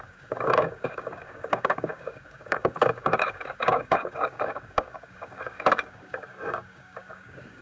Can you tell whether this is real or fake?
fake